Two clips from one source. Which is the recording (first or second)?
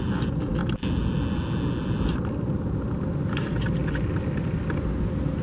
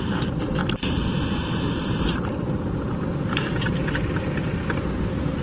first